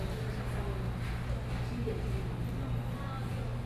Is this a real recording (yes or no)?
yes